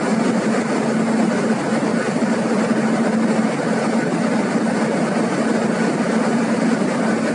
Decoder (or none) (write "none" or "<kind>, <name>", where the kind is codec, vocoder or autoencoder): none